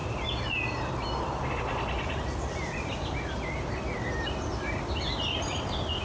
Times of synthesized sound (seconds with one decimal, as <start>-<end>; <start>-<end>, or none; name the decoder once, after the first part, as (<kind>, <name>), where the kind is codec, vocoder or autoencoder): none